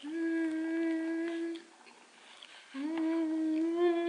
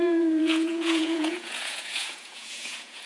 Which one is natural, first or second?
first